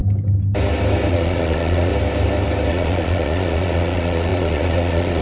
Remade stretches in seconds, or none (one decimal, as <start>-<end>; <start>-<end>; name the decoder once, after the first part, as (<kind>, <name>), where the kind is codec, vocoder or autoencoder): 1.1-1.9 (vocoder, Vocos); 2.7-5.2